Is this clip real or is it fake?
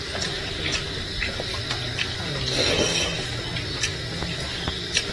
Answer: real